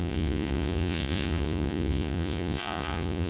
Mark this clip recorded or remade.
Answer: remade